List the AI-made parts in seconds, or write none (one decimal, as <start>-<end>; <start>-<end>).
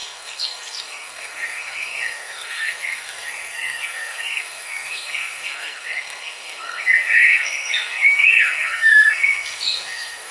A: 0.0-10.3